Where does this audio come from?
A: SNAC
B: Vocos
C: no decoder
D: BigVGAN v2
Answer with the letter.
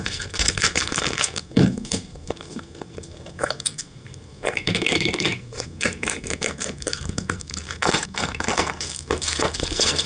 A